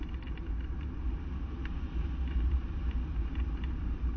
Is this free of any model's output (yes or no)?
no